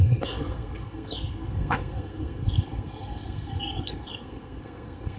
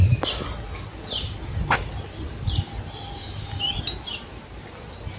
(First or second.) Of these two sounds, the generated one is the first